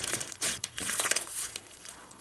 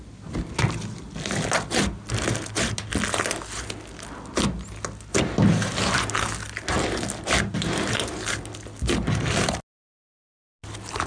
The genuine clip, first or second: second